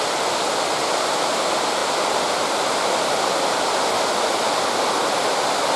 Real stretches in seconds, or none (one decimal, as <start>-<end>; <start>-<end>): 0.0-5.8